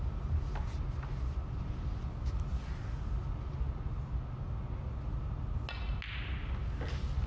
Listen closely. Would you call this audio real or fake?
real